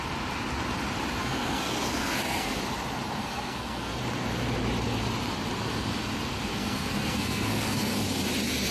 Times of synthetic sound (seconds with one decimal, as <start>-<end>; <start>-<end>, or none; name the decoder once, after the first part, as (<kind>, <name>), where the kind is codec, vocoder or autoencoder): 1.2-2.6 (codec, SNAC); 3.2-4.0; 6.5-8.0